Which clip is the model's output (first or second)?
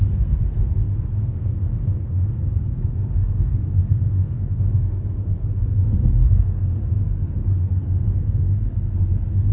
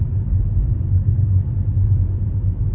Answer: first